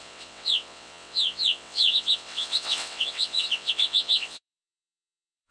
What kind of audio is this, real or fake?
fake